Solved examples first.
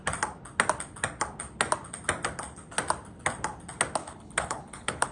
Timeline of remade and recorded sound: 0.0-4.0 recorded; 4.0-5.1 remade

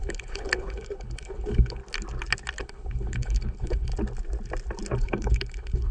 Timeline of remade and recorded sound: 0.0-1.8 remade; 1.8-2.6 recorded; 2.6-3.9 remade; 3.9-5.0 recorded; 5.0-5.9 remade